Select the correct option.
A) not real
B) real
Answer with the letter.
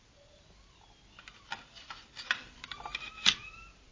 B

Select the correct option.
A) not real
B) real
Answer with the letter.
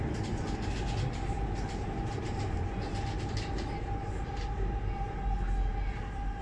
B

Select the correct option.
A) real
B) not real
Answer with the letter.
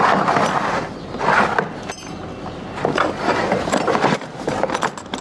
A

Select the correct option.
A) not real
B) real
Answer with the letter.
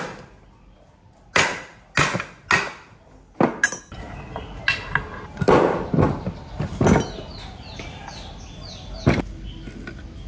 B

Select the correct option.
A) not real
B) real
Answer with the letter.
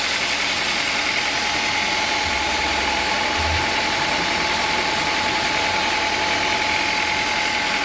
B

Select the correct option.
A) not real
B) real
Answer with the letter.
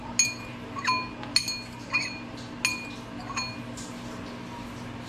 B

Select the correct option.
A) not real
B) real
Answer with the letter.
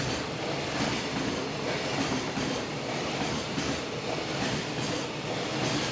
B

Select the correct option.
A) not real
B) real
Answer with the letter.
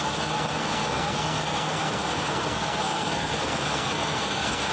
A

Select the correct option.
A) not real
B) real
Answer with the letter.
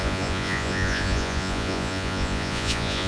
A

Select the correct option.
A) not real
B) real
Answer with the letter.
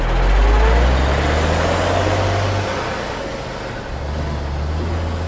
B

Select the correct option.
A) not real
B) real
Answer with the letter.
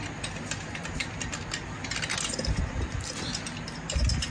B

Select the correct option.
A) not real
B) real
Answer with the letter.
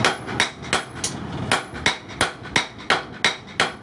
B